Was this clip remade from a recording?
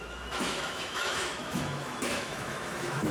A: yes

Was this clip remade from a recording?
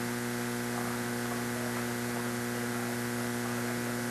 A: no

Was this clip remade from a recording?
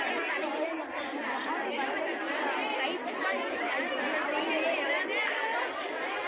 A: no